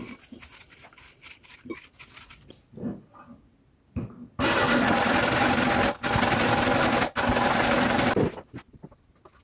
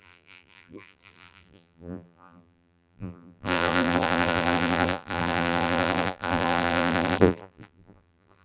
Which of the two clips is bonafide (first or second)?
first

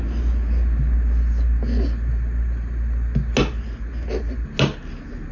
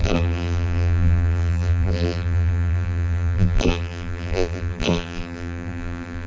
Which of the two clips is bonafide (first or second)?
first